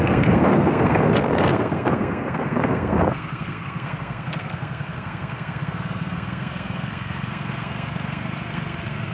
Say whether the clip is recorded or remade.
remade